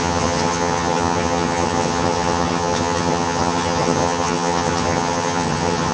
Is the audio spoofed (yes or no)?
yes